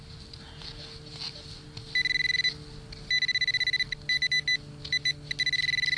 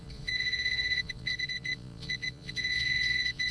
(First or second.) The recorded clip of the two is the first